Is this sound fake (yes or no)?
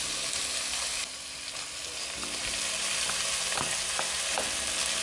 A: no